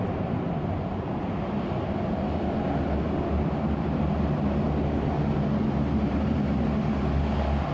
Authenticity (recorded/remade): recorded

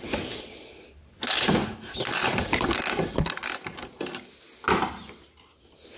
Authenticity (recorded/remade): recorded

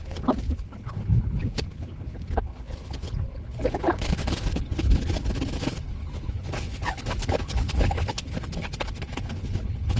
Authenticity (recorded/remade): remade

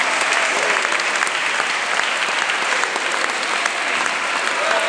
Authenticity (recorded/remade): recorded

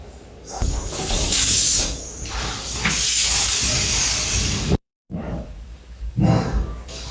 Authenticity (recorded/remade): remade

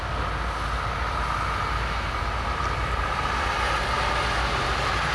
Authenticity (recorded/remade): recorded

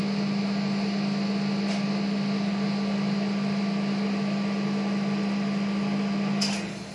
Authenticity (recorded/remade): recorded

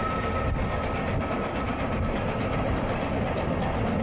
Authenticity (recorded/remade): recorded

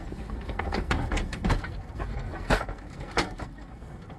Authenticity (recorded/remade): remade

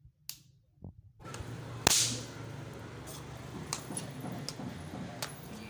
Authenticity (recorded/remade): recorded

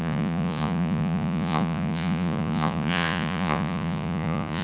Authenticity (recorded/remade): remade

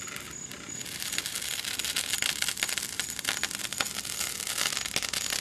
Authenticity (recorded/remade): recorded